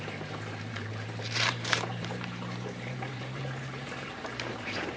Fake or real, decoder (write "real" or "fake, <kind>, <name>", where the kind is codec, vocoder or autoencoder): fake, vocoder, BigVGAN v2